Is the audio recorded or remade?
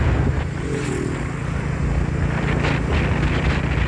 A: recorded